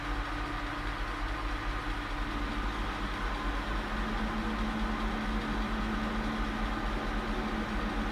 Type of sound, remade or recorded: recorded